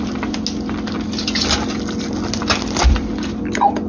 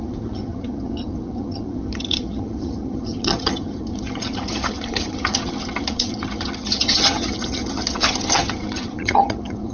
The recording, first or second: first